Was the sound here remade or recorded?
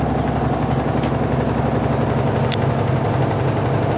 recorded